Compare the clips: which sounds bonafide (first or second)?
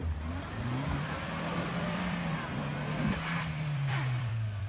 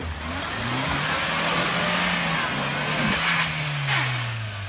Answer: second